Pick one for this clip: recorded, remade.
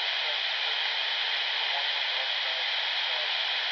recorded